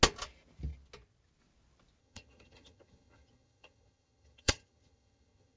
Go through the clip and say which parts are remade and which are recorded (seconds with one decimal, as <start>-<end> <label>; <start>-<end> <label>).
0.0-2.0 recorded; 2.0-5.6 remade